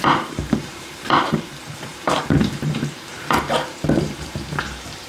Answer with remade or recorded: remade